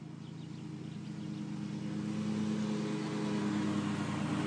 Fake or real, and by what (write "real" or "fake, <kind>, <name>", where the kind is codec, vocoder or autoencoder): real